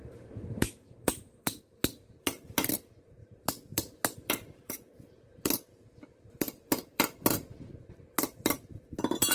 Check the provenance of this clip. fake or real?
fake